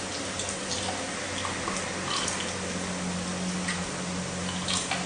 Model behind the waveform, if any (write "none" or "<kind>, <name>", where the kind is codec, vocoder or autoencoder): none